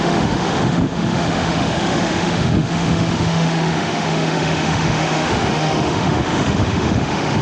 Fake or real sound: fake